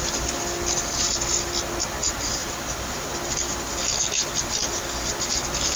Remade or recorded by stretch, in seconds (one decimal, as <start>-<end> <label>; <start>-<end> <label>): 0.0-2.4 recorded; 2.4-3.2 remade; 3.2-5.8 recorded

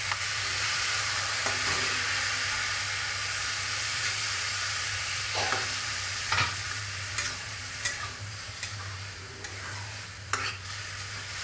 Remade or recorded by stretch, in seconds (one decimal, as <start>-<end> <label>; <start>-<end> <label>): 0.0-1.4 remade; 1.4-3.7 recorded; 3.7-11.4 remade

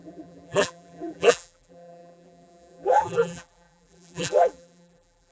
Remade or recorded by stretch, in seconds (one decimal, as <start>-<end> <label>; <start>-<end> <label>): 0.0-5.3 remade

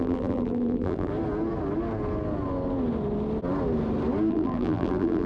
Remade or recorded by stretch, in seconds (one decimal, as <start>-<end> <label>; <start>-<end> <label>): 0.0-1.1 remade; 1.1-4.3 recorded; 4.3-5.3 remade

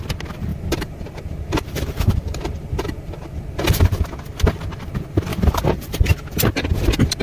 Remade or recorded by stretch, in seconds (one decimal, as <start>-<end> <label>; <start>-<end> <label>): 0.0-0.5 recorded; 0.5-4.0 remade; 4.0-5.3 recorded; 5.3-7.2 remade

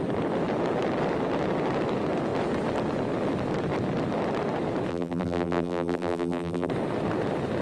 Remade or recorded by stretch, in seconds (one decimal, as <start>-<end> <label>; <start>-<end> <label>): 0.0-4.9 recorded; 4.9-6.7 remade; 6.7-7.6 recorded

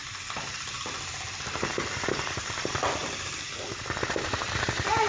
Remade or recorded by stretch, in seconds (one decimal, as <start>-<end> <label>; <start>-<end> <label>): 0.0-3.0 recorded; 3.0-3.7 remade; 3.7-5.1 recorded